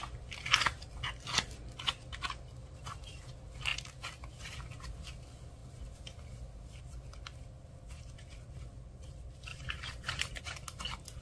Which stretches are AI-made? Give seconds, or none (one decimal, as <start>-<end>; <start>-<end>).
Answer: 2.6-3.2; 9.5-10.4